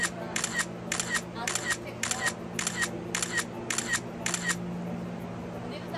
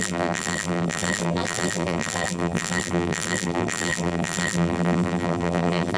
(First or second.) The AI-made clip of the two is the second